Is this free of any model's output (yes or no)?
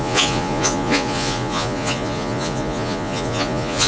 no